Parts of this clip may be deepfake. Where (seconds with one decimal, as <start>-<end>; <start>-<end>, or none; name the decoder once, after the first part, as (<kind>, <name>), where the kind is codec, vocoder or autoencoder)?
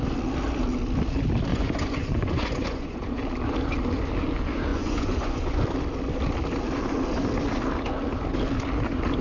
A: 1.5-3.2 (vocoder, Vocos); 4.7-5.6